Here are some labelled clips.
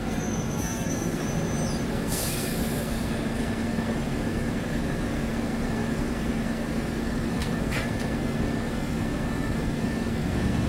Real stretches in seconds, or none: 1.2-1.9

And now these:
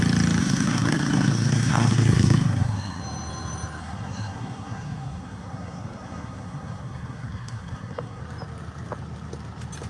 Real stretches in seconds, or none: 0.0-0.4; 3.0-3.8; 8.2-9.9